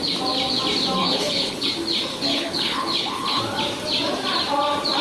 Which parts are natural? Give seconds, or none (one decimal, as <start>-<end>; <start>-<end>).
0.0-1.0; 1.7-2.1; 3.4-5.0